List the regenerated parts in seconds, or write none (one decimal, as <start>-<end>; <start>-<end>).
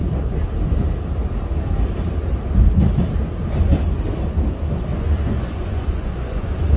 4.9-6.8